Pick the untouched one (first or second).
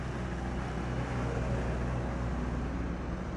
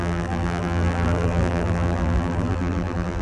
first